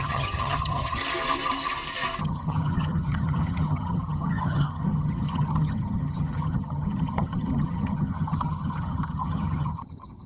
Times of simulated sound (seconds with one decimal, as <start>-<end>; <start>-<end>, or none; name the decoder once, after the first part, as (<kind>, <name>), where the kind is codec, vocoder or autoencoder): 0.0-1.0 (vocoder, HiFi-GAN); 2.2-10.3